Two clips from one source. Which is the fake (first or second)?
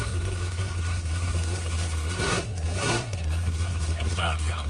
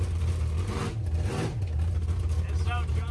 first